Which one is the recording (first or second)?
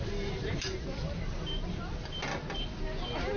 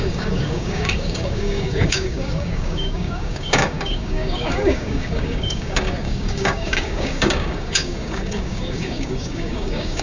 first